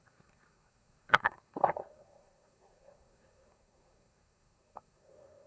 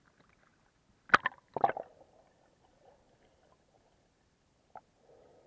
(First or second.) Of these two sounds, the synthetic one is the first